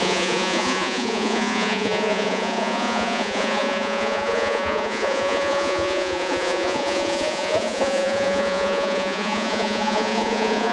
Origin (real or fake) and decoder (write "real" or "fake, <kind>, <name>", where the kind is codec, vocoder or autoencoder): fake, vocoder, Vocos